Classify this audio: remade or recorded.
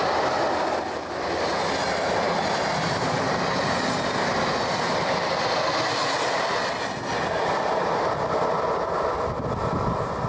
recorded